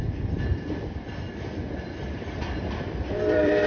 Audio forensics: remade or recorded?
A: remade